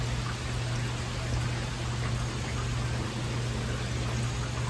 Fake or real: real